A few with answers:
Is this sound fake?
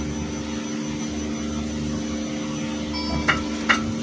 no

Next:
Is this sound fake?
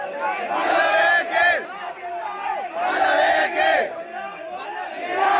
no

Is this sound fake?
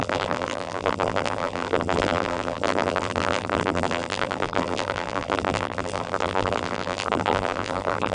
yes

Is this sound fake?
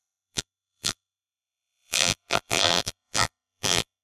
yes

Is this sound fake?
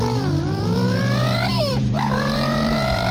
yes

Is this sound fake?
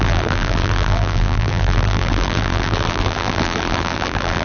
yes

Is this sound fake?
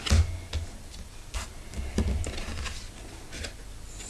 no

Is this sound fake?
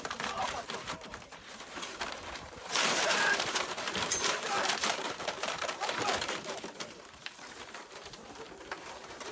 yes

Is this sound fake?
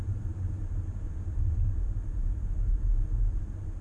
yes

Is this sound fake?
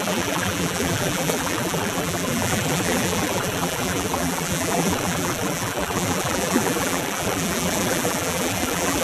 yes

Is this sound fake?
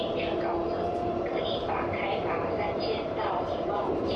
yes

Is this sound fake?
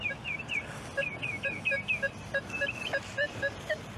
no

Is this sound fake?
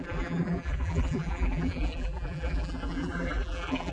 yes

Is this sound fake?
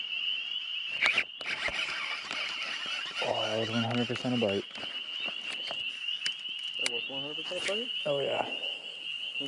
no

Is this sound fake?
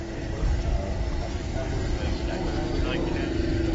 no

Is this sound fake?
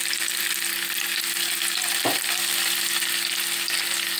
no